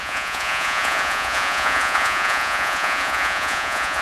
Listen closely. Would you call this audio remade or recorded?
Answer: remade